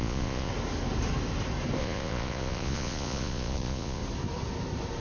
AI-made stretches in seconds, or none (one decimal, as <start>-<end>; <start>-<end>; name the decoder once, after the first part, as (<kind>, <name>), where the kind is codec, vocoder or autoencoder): 0.0-0.5 (vocoder, Vocos); 1.8-4.0